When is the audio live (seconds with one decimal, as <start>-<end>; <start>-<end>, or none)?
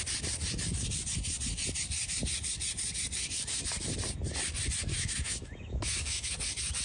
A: 0.0-4.9; 6.3-6.8